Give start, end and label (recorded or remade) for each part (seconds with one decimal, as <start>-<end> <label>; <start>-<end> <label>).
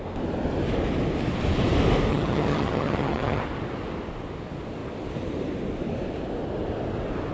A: 0.0-2.1 recorded; 2.1-3.4 remade; 3.4-7.3 recorded